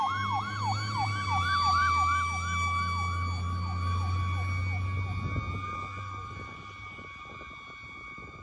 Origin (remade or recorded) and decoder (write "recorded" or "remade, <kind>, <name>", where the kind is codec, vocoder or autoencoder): recorded